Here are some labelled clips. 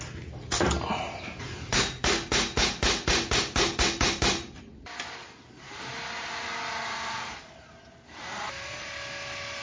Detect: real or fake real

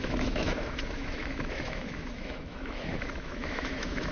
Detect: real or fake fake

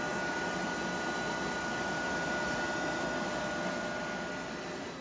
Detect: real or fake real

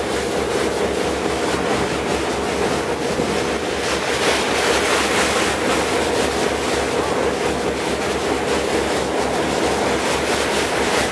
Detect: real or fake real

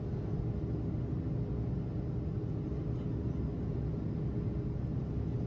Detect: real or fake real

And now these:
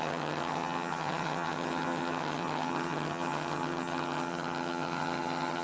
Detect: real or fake fake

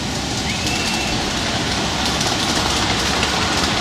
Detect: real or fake real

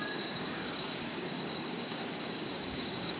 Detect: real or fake fake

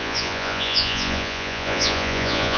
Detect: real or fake fake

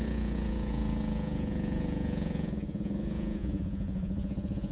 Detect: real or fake fake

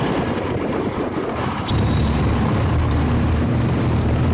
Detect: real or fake fake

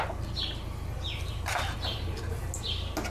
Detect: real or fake real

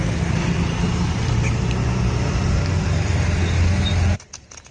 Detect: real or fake real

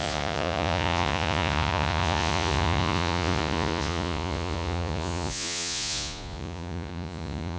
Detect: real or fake fake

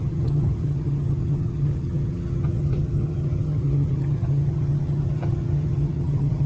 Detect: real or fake fake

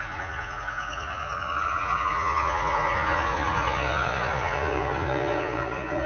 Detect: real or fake fake